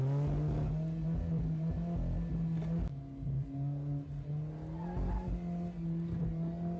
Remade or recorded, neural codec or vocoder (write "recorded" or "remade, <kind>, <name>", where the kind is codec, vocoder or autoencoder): recorded